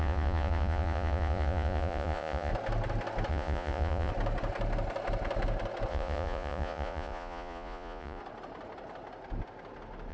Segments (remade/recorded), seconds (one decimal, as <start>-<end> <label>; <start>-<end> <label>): 0.0-2.5 remade; 2.5-3.3 recorded; 3.3-4.1 remade; 4.1-5.9 recorded; 5.9-8.2 remade; 8.2-10.1 recorded